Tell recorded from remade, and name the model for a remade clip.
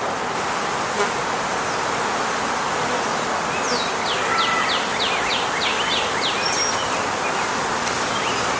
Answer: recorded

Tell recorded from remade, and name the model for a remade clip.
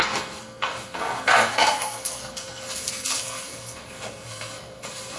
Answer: remade, codec, SNAC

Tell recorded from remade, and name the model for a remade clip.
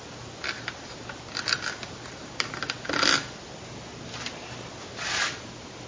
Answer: recorded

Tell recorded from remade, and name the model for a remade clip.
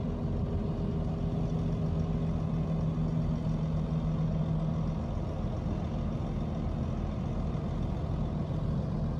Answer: recorded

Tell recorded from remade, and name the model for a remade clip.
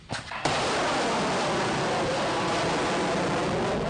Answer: recorded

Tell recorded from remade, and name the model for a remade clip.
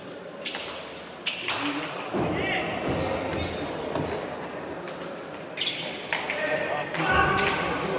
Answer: recorded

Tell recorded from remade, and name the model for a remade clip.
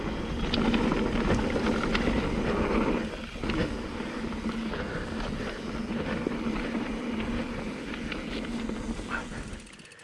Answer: recorded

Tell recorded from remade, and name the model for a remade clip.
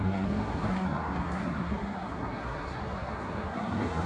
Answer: remade, codec, SNAC